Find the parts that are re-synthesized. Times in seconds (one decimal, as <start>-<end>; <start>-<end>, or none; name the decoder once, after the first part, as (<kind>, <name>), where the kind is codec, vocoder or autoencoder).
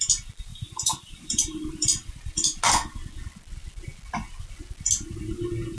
0.5-2.6 (vocoder, BigVGAN v2)